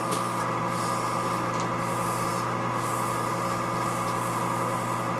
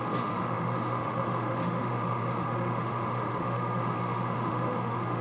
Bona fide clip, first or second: first